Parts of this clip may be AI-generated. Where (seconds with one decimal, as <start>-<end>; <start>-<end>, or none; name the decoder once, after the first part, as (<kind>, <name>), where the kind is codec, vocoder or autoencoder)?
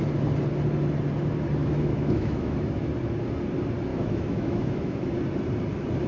1.6-2.9 (autoencoder, DAC-VAE); 3.9-5.1